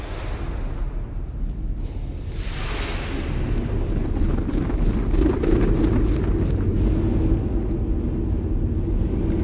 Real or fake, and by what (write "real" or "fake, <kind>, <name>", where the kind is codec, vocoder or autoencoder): real